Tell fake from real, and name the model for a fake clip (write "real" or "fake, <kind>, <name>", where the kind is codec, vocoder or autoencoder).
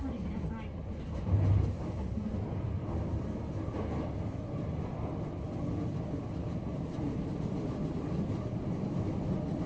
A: real